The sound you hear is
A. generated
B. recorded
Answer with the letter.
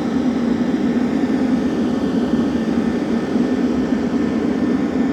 B